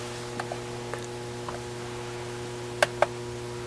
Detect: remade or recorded recorded